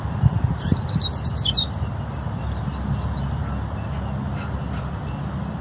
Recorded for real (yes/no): yes